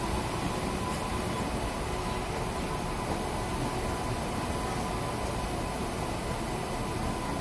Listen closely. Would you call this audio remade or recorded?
recorded